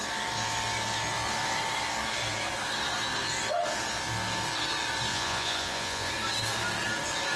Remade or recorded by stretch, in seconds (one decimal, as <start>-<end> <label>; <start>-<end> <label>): 0.0-5.1 recorded; 5.1-6.1 remade; 6.1-7.4 recorded